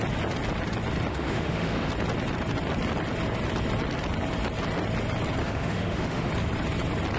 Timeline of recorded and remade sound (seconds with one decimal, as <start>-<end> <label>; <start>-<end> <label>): 0.0-1.1 recorded; 1.1-1.9 remade; 1.9-5.4 recorded; 5.4-6.3 remade; 6.3-7.2 recorded